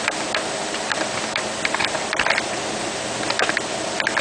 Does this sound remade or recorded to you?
recorded